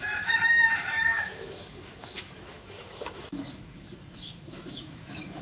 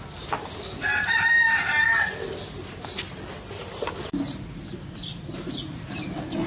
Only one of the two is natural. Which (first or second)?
second